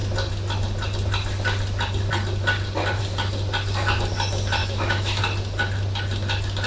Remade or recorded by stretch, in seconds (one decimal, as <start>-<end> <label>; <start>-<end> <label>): 0.0-4.6 recorded; 4.6-5.2 remade; 5.2-6.7 recorded